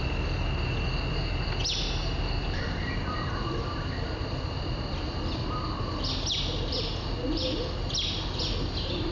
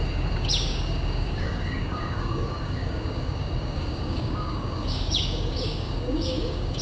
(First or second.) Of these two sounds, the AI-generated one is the second